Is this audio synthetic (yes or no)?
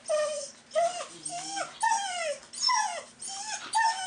no